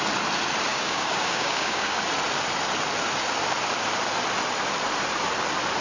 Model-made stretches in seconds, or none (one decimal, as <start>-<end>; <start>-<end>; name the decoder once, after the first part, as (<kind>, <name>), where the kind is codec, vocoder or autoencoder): 0.7-2.0 (codec, DAC)